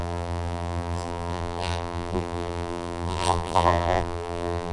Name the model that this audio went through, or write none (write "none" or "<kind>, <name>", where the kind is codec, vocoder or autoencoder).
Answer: vocoder, BigVGAN v2